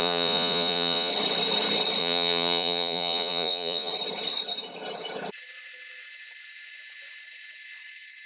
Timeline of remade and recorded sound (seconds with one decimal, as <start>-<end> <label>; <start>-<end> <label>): 0.0-1.1 remade; 1.1-2.0 recorded; 2.0-3.9 remade; 3.9-8.3 recorded